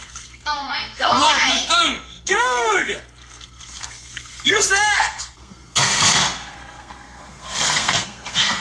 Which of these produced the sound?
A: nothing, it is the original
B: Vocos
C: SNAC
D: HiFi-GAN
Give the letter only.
C